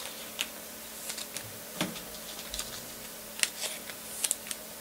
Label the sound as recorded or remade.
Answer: recorded